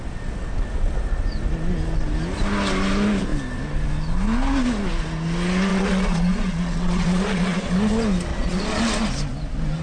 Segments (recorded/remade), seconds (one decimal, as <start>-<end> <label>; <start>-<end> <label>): 0.0-5.7 recorded; 5.7-7.7 remade; 7.7-8.3 recorded; 8.3-8.8 remade; 8.8-9.8 recorded